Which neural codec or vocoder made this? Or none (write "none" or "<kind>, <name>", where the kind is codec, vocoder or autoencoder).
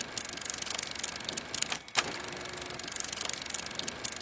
none